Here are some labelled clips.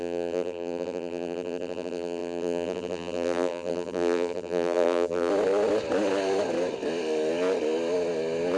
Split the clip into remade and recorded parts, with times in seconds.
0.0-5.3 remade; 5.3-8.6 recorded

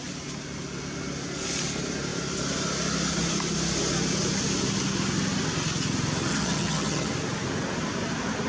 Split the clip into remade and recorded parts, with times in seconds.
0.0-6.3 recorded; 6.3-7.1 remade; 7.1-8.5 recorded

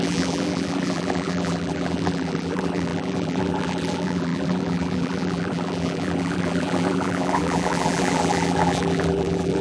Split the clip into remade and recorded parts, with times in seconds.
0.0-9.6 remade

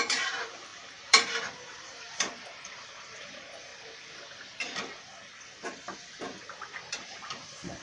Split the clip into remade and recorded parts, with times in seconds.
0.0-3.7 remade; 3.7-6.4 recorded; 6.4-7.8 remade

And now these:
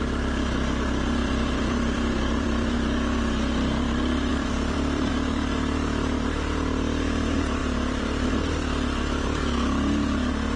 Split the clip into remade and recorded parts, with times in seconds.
0.0-1.2 recorded; 1.2-2.7 remade; 2.7-4.3 recorded; 4.3-5.1 remade; 5.1-7.6 recorded; 7.6-8.3 remade; 8.3-10.6 recorded

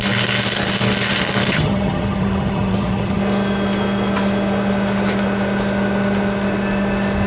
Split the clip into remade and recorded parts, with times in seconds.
0.0-1.5 recorded; 1.5-3.2 remade; 3.2-7.3 recorded

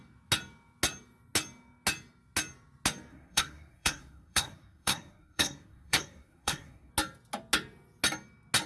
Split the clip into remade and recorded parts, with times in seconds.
0.0-3.1 recorded; 3.1-6.9 remade; 6.9-8.7 recorded